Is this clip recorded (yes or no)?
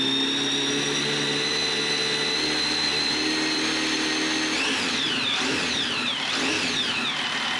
yes